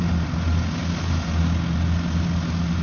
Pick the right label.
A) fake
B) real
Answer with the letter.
B